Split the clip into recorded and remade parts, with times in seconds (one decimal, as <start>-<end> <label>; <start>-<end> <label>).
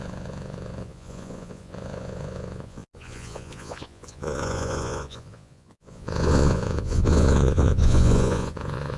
0.0-9.0 remade